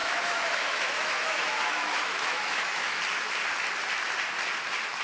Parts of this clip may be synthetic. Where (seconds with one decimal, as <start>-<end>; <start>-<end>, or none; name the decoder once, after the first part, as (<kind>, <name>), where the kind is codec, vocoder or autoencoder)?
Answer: 0.0-3.0 (autoencoder, DAC-VAE)